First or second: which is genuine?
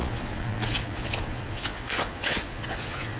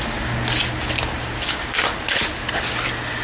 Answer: second